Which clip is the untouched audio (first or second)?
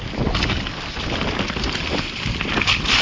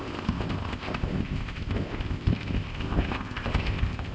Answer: first